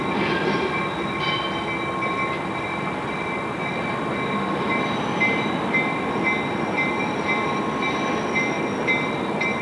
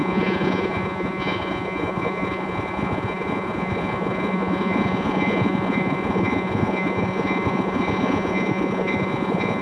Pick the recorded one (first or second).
first